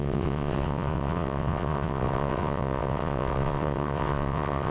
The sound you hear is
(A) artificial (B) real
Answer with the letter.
A